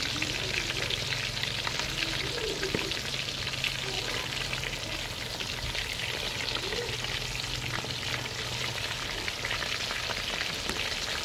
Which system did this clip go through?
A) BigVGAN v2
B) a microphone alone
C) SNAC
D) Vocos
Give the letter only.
B